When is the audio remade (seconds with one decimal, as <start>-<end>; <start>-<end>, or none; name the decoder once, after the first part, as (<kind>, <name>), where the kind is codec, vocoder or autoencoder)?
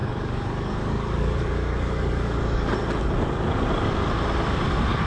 0.0-2.7 (codec, DAC)